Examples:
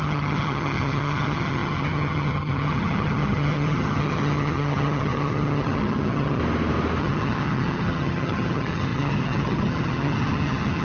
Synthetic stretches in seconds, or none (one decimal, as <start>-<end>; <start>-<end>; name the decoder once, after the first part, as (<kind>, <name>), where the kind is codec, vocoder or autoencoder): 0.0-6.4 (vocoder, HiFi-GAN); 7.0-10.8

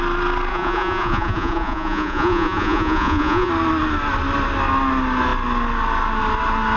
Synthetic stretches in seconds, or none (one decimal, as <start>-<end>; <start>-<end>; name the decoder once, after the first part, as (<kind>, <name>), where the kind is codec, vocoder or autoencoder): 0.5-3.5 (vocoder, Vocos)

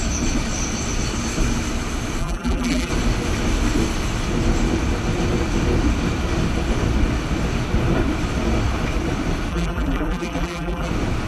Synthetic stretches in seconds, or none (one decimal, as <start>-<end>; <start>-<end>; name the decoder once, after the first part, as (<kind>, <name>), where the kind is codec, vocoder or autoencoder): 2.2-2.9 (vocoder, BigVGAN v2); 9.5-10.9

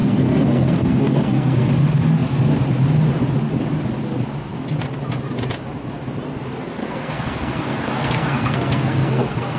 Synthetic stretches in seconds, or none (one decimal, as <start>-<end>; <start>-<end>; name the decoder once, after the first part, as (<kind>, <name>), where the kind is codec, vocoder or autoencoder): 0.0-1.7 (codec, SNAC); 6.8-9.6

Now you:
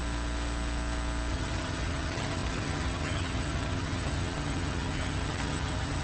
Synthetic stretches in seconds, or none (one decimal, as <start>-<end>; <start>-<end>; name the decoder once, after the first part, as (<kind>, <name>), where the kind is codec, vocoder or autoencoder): 1.3-6.0 (vocoder, HiFi-GAN)